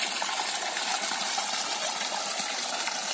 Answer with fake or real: real